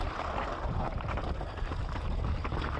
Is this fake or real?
real